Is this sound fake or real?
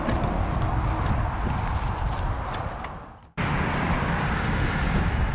real